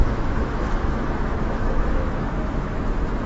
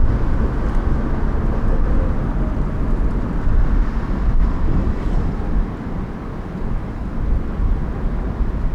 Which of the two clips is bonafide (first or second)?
second